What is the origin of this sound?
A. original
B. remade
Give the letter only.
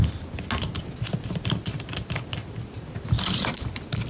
A